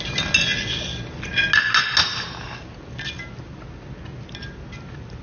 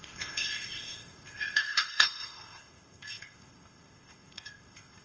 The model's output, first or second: second